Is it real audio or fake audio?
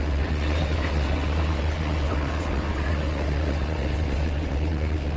fake